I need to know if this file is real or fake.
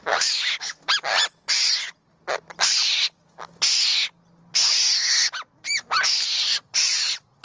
real